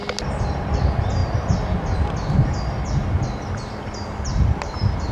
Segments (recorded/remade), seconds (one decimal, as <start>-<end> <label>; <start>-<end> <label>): 0.0-4.3 recorded; 4.3-5.1 remade